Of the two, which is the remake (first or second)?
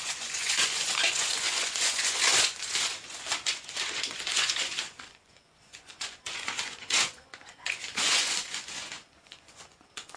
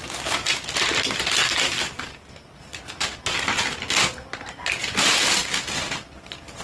first